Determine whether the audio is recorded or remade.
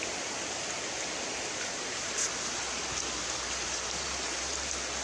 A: recorded